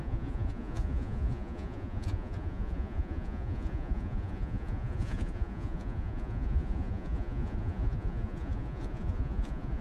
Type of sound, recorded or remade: remade